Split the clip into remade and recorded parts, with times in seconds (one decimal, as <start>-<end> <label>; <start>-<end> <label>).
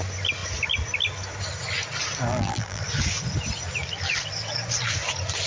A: 0.0-2.3 recorded; 2.3-2.8 remade; 2.8-5.5 recorded